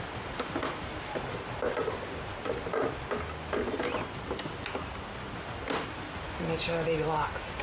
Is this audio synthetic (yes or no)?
no